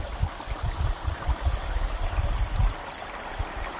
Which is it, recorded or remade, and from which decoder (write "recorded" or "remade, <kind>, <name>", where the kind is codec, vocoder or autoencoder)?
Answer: recorded